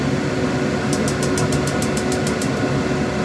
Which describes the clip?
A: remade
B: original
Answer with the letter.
B